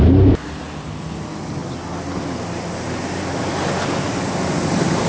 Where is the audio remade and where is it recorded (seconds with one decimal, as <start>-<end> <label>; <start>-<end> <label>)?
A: 0.0-5.1 recorded